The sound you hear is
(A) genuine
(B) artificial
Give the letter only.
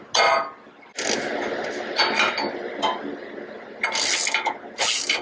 A